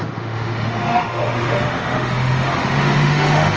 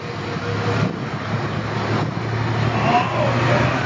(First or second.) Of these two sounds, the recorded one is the second